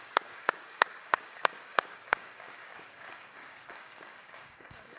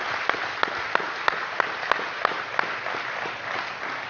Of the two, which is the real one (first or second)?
second